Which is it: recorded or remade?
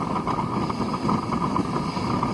recorded